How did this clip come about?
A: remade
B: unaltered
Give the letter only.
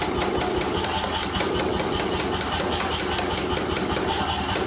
B